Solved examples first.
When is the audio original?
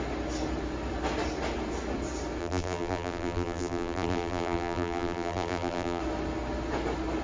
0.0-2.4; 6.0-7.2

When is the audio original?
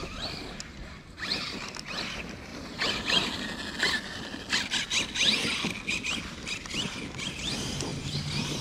0.0-2.5; 3.3-8.6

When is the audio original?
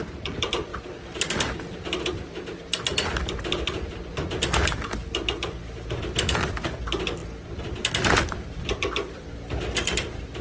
0.7-1.3; 7.2-7.9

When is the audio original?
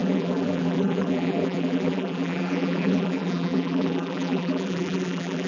none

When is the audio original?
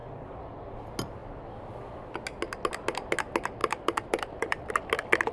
0.6-1.2; 2.0-3.6; 4.7-5.3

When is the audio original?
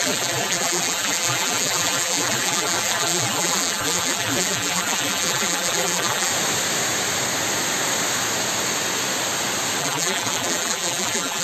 6.3-9.8